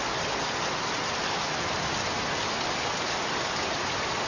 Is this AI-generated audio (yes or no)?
no